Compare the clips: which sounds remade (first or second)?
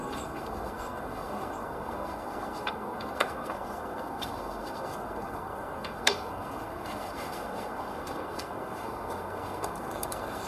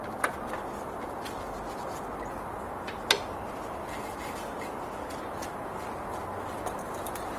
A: first